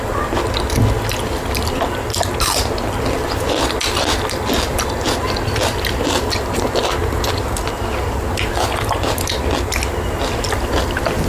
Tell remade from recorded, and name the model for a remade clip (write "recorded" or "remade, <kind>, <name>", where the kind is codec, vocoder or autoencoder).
recorded